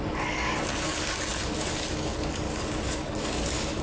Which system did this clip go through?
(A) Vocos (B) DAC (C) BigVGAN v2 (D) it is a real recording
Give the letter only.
B